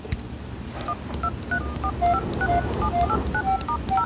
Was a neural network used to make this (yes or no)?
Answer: no